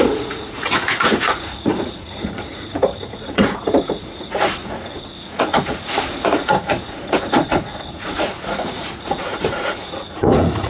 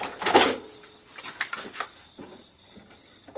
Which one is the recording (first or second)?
second